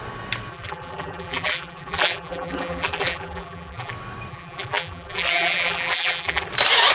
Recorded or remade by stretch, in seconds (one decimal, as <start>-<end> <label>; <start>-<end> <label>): 0.0-0.5 recorded; 0.5-3.9 remade; 3.9-4.3 recorded; 4.3-6.5 remade; 6.5-6.9 recorded

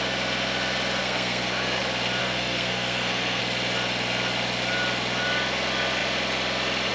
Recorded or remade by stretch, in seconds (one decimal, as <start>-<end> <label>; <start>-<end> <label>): 0.0-1.0 recorded; 1.0-1.8 remade; 1.8-2.2 recorded; 2.2-3.4 remade; 3.4-6.9 recorded

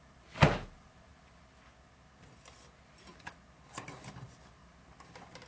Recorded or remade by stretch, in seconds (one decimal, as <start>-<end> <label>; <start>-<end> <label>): 0.0-5.5 recorded

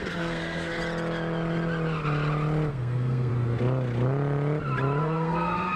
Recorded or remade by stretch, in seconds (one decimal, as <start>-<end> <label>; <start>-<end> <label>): 0.0-0.8 remade; 0.8-2.7 recorded; 2.7-3.3 remade; 3.3-5.0 recorded; 5.0-5.8 remade

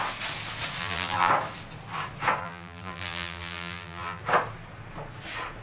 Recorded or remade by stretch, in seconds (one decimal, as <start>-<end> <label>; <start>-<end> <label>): 0.0-0.8 recorded; 0.8-1.3 remade; 1.3-2.4 recorded; 2.4-4.2 remade; 4.2-5.6 recorded

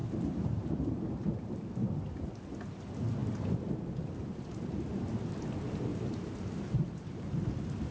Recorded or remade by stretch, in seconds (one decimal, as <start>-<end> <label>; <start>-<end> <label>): 0.0-1.5 remade; 1.5-5.9 recorded; 5.9-7.2 remade; 7.2-7.9 recorded

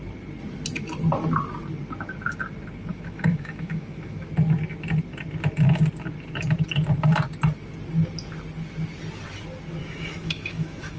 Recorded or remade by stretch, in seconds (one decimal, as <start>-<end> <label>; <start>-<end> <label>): 0.0-2.9 recorded; 2.9-4.3 remade; 4.3-9.8 recorded; 9.8-11.0 remade